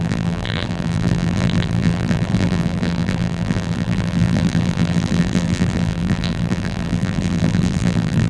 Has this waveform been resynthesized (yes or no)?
yes